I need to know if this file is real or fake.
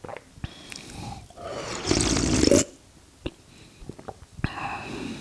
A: real